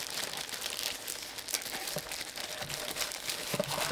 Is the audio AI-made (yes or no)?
no